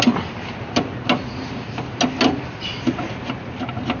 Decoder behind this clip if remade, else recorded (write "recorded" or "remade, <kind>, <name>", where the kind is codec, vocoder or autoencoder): recorded